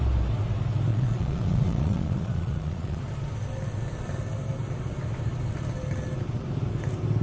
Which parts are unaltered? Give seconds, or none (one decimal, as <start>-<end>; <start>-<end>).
0.0-0.9; 3.0-7.2